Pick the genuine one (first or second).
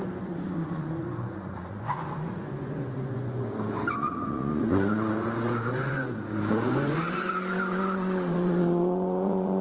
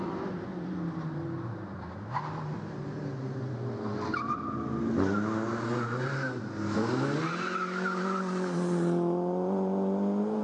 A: second